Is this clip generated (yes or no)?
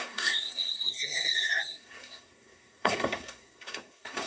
yes